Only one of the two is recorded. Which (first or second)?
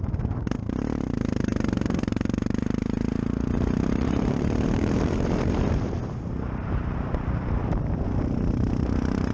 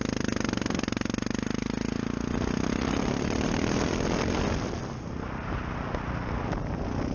second